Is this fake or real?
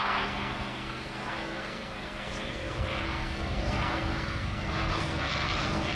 fake